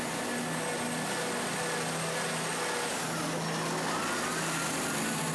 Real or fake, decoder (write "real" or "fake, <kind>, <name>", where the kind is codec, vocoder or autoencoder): real